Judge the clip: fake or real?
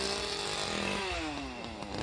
real